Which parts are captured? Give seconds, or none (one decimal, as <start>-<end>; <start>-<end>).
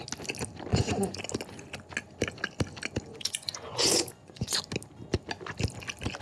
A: 0.0-0.7; 1.2-3.1; 4.6-6.2